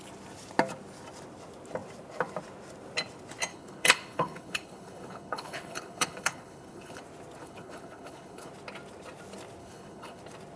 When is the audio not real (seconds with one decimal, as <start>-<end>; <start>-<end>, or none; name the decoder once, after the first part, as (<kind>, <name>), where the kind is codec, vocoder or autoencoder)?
3.5-7.0 (codec, HILCodec); 7.4-8.5; 9.6-10.2